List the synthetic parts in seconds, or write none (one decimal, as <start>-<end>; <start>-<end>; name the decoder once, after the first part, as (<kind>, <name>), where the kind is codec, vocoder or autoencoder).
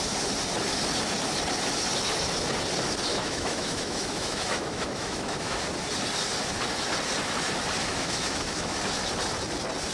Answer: 3.1-5.6 (autoencoder, DAC-VAE); 7.9-8.8